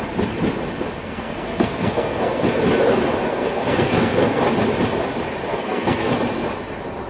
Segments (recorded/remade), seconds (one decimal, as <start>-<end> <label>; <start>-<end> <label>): 0.0-1.0 recorded; 1.0-2.6 remade; 2.6-3.3 recorded; 3.3-4.4 remade; 4.4-5.5 recorded; 5.5-6.1 remade; 6.1-7.1 recorded